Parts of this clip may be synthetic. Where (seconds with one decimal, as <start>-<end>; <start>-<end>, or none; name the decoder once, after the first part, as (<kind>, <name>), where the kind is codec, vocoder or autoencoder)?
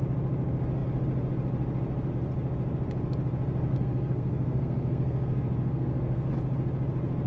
3.7-6.3 (codec, SNAC)